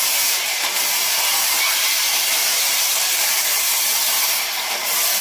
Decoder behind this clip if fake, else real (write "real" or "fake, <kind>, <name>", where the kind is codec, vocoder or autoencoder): fake, vocoder, BigVGAN v2